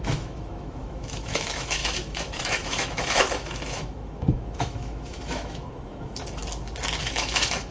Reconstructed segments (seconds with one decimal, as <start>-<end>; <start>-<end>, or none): 0.0-6.4; 7.0-7.7